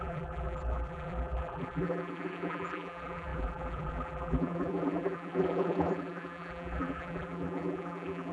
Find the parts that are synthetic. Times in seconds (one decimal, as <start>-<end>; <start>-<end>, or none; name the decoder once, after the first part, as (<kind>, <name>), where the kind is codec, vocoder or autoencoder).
0.0-8.3 (vocoder, BigVGAN v2)